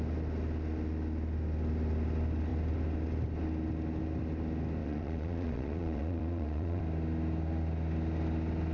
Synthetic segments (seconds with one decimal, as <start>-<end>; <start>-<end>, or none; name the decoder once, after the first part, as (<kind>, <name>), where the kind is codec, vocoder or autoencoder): 4.8-6.8 (vocoder, Vocos)